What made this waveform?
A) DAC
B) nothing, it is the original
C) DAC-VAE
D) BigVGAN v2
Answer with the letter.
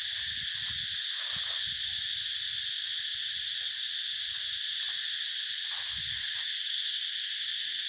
B